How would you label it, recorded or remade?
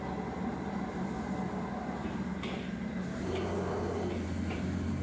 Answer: recorded